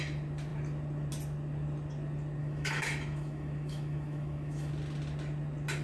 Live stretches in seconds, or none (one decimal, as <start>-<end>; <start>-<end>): 0.0-2.4; 4.7-5.8